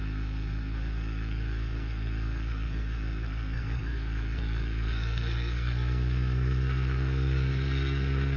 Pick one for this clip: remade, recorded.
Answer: remade